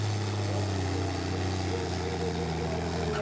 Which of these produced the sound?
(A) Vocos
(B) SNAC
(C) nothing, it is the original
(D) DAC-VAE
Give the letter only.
C